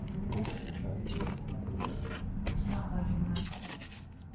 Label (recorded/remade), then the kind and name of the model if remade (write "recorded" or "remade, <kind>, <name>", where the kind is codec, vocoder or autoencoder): recorded